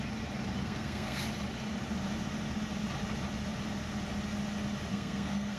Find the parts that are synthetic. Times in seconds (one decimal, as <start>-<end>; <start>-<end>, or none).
0.6-1.2; 4.9-5.6